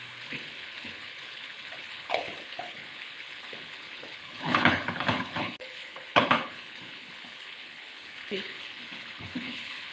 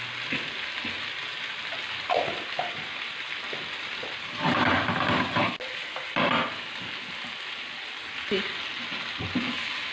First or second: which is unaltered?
second